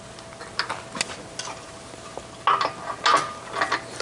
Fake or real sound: real